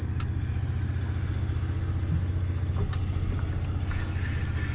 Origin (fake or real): real